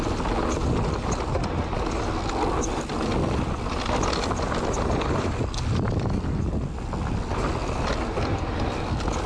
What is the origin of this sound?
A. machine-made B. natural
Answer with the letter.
B